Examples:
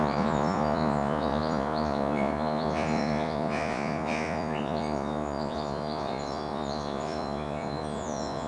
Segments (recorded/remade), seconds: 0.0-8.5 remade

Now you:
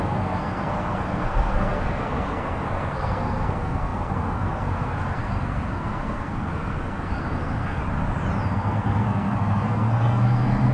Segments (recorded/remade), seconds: 0.0-7.8 remade; 7.8-8.5 recorded; 8.5-10.7 remade